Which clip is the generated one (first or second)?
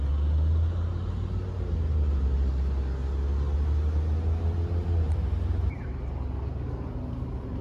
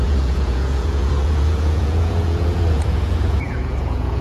second